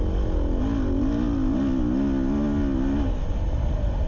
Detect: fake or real real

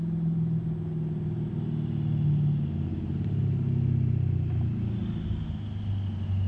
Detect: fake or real real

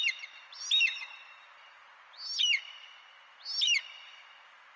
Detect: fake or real real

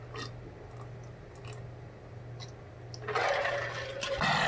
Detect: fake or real real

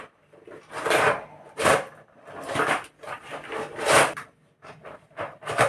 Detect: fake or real real